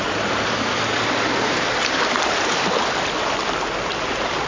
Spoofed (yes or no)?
yes